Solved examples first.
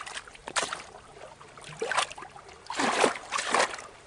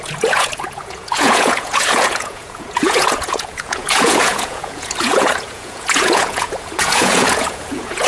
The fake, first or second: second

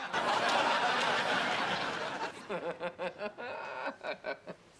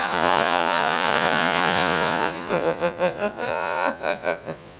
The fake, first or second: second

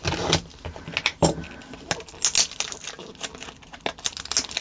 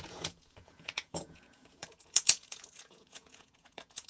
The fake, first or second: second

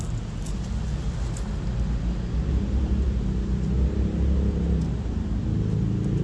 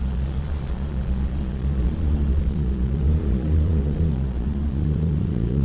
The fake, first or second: second